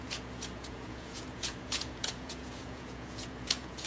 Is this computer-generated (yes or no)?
yes